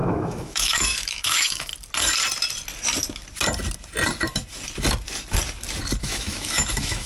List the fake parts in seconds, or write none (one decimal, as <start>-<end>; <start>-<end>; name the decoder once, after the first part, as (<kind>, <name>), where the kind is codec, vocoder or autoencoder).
0.0-1.7 (autoencoder, DAC-VAE); 6.0-7.1